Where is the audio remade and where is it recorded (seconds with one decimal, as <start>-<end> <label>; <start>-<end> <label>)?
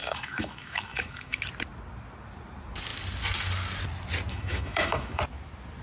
0.0-1.4 remade; 1.4-4.3 recorded; 4.3-5.2 remade; 5.2-5.8 recorded